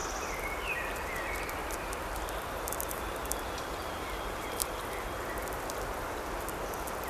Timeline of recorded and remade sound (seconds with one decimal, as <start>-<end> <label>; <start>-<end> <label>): 0.0-1.6 recorded; 1.6-4.6 remade; 4.6-7.1 recorded